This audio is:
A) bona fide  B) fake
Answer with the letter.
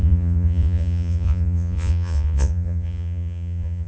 B